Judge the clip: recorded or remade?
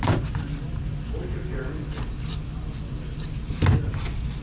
recorded